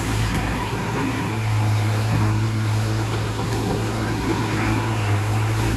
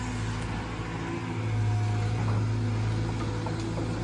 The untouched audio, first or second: second